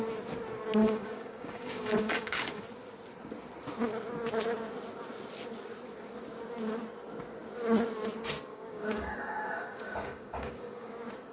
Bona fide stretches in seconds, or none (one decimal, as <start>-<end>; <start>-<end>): 0.0-0.8; 2.6-8.5; 10.9-11.3